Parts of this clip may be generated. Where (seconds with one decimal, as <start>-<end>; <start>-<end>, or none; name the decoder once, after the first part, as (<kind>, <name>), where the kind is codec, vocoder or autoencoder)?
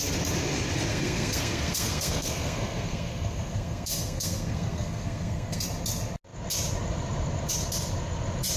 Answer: 0.9-5.6 (codec, SNAC)